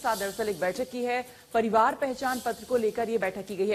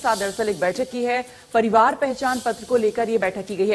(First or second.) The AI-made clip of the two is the second